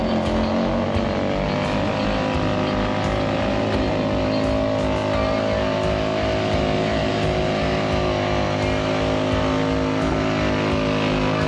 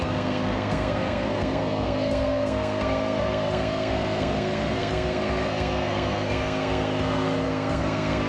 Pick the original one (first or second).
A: first